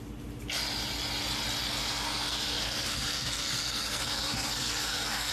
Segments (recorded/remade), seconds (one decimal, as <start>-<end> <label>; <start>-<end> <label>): 0.0-1.8 recorded; 1.8-5.3 remade